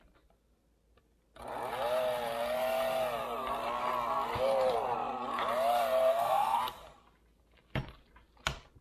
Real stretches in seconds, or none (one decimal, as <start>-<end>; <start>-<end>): 0.0-6.1; 6.6-8.8